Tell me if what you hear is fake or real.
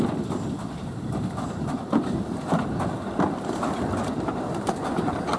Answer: real